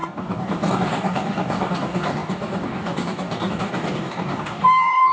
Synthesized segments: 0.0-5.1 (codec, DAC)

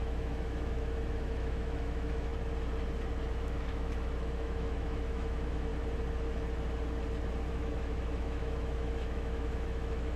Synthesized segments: 0.0-2.3 (autoencoder, DAC-VAE); 3.3-5.7; 7.5-10.2